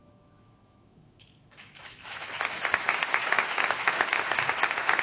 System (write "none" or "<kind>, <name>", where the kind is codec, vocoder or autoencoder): autoencoder, DAC-VAE